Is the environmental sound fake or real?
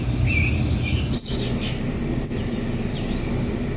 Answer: real